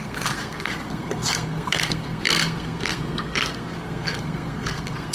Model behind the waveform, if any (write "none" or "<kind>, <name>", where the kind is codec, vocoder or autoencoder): codec, SNAC